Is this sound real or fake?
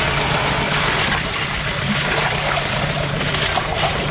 real